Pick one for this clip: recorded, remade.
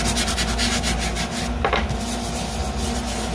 recorded